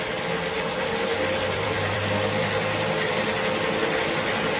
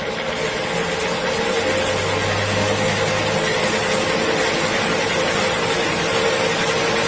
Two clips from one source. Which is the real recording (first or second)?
second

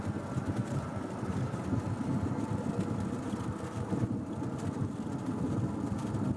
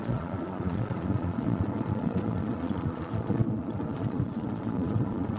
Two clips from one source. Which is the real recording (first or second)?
first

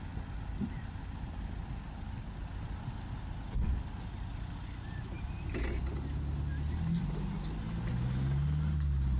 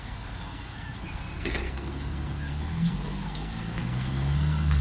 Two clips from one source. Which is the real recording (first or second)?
first